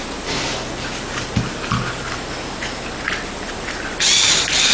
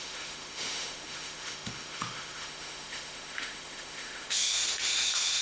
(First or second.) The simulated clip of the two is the second